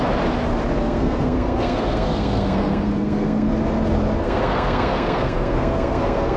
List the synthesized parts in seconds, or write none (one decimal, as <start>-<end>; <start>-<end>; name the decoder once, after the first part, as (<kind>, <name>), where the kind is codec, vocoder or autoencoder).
0.8-3.5 (codec, SNAC); 4.2-6.4